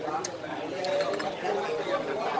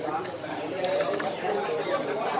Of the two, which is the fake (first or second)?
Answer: second